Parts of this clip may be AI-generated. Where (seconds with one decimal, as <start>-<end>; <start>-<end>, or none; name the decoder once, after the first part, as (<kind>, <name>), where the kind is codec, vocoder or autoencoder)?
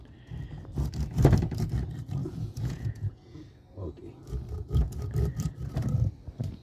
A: 2.2-3.4 (vocoder, Vocos)